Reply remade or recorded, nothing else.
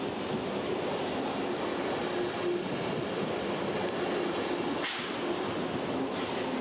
recorded